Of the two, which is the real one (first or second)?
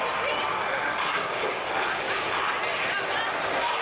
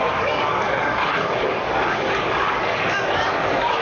first